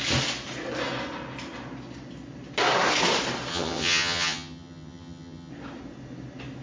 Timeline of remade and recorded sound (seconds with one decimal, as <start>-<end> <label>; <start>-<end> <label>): 0.0-3.5 recorded; 3.5-5.5 remade; 5.5-6.6 recorded